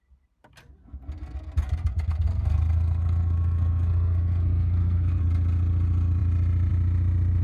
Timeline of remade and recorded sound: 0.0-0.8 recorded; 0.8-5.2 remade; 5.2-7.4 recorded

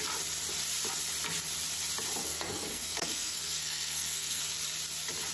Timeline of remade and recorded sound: 0.0-2.2 recorded; 2.2-4.4 remade; 4.4-5.3 recorded